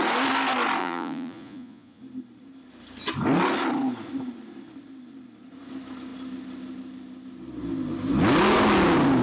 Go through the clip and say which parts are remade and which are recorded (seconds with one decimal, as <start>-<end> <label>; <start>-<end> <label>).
0.0-0.8 recorded; 0.8-2.0 remade; 2.0-9.2 recorded